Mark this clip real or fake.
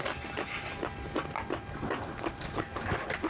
real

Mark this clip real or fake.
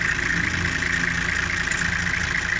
real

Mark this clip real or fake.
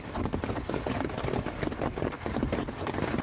real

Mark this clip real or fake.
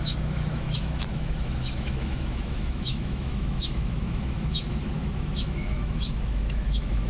fake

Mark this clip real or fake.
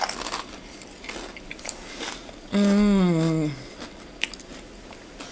real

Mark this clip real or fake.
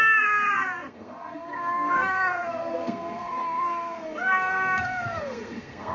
fake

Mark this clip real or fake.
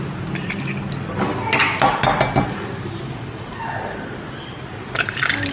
real